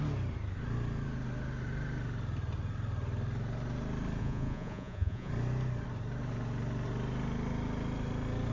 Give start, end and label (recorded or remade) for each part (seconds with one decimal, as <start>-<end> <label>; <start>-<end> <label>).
0.0-4.2 recorded; 4.2-5.3 remade; 5.3-8.5 recorded